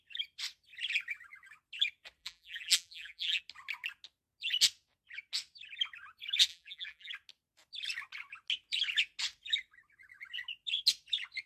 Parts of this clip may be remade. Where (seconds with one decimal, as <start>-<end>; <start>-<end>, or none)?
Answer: 2.2-3.4; 6.5-7.1